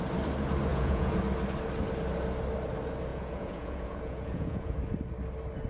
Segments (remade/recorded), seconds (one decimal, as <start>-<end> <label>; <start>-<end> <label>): 0.0-0.7 recorded; 0.7-1.2 remade; 1.2-3.1 recorded; 3.1-4.8 remade; 4.8-5.7 recorded